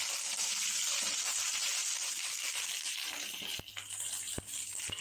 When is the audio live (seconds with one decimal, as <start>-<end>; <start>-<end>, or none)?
0.0-5.0